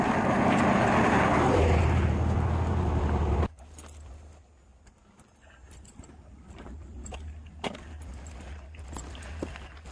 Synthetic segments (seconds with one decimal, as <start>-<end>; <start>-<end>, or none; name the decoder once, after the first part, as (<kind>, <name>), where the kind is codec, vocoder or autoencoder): 4.7-8.8 (vocoder, BigVGAN v2)